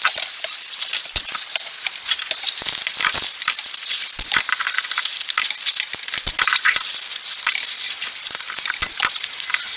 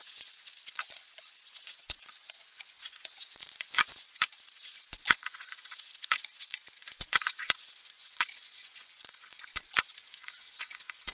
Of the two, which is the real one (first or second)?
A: first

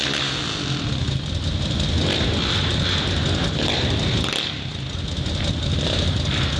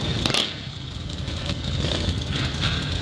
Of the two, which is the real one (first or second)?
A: first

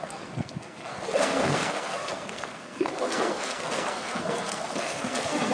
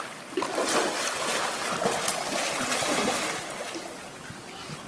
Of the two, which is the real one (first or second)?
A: second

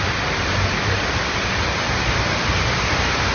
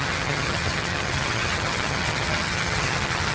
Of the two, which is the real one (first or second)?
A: first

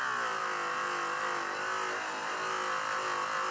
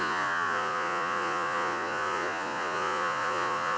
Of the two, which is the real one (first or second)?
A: first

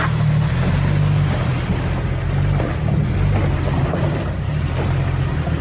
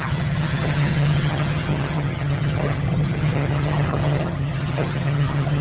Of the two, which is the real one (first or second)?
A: first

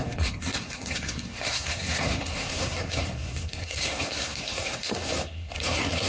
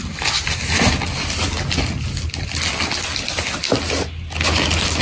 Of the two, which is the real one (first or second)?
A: second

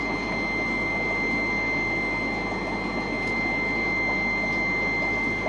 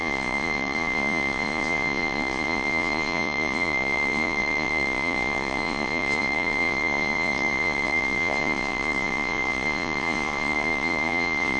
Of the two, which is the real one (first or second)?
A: first